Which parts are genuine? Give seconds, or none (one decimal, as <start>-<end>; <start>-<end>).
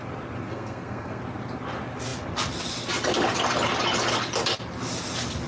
0.0-0.5; 1.2-5.5